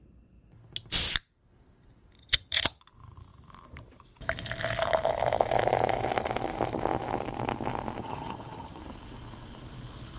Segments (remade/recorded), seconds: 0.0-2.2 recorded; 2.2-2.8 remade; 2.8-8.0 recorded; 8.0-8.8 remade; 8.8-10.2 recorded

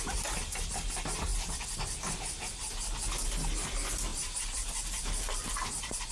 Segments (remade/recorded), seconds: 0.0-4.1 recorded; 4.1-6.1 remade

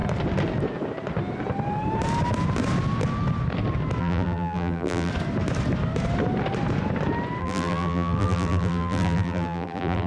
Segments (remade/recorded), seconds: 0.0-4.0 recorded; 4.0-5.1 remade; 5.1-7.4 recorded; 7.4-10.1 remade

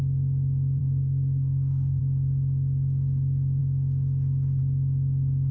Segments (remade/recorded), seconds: 0.0-0.8 recorded; 0.8-2.0 remade; 2.0-5.5 recorded

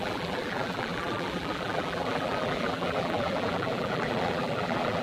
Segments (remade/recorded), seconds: 0.0-5.0 remade

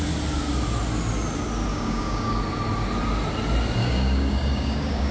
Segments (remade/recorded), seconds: 0.0-1.7 recorded; 1.7-2.4 remade; 2.4-3.8 recorded; 3.8-5.1 remade